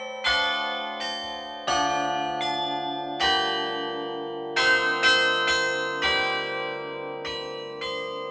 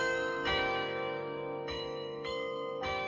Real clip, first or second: first